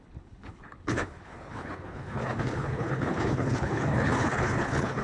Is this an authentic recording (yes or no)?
no